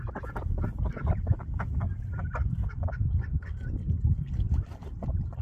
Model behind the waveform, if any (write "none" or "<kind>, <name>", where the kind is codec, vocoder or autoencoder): none